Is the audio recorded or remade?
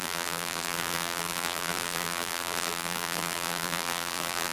remade